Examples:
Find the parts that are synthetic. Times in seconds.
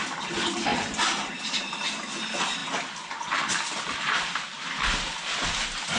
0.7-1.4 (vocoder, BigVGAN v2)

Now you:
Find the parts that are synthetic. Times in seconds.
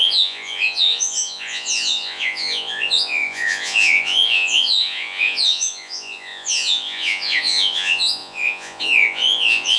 0.0-9.8 (vocoder, Vocos)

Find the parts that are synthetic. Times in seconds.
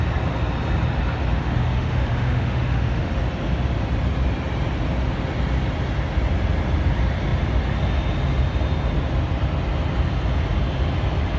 1.4-3.1 (autoencoder, DAC-VAE)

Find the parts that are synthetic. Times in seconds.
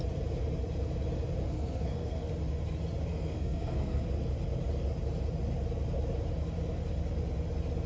1.4-2.3 (codec, SNAC); 3.1-4.0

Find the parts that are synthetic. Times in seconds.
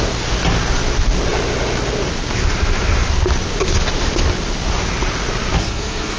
5.6-6.2 (codec, SNAC)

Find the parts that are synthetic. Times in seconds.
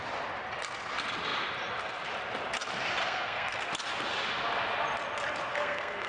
3.0-3.7 (codec, SNAC); 5.5-6.1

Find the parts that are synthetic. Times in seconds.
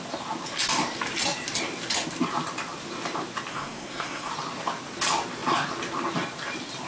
3.5-4.3 (codec, SNAC)